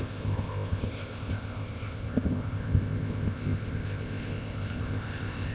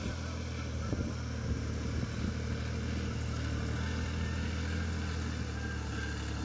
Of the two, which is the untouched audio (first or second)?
second